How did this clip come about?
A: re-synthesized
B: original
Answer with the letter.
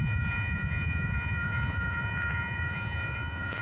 A